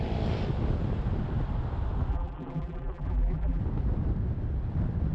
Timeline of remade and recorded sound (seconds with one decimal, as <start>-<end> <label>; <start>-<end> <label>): 0.0-2.1 recorded; 2.1-3.6 remade; 3.6-5.1 recorded